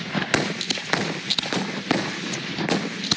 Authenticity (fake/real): real